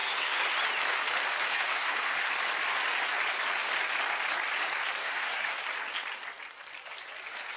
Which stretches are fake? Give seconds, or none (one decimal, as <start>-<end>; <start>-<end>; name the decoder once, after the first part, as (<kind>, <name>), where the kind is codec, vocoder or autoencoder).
0.0-0.5 (codec, SNAC); 1.5-2.3; 5.0-5.6